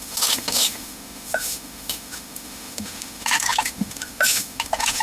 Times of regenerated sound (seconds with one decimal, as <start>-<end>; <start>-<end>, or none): 0.0-5.0